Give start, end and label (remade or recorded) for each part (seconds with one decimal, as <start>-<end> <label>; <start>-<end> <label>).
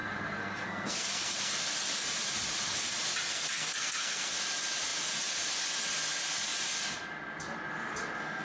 0.0-1.5 remade; 1.5-3.3 recorded; 3.3-4.3 remade; 4.3-8.4 recorded